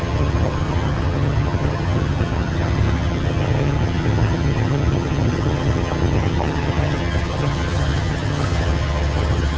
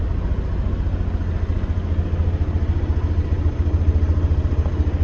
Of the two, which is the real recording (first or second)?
second